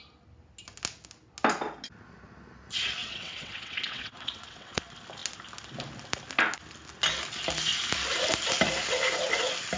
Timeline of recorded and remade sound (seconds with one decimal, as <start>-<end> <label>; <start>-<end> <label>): 0.0-3.0 recorded; 3.0-4.8 remade; 4.8-9.8 recorded